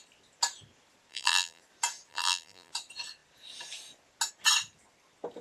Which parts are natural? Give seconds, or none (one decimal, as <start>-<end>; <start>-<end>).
0.0-1.1; 1.6-2.1; 2.7-5.4